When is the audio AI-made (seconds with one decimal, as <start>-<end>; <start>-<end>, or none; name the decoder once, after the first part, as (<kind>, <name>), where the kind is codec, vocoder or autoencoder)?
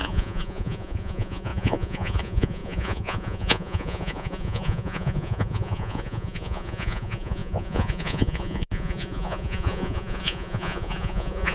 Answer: 0.0-11.5 (vocoder, Vocos)